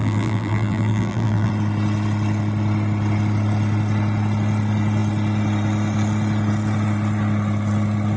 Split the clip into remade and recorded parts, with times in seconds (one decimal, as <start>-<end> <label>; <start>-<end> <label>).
0.0-1.5 remade; 1.5-8.2 recorded